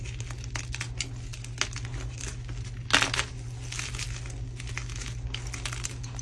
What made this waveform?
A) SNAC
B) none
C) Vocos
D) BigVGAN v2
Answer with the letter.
B